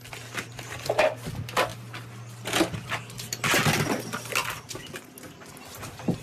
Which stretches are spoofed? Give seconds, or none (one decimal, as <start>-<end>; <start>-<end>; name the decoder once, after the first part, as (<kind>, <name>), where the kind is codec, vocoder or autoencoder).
none